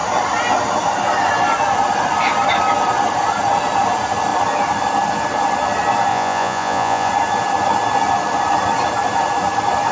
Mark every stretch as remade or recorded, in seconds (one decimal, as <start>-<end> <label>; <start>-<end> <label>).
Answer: 0.0-6.1 recorded; 6.1-7.1 remade; 7.1-9.9 recorded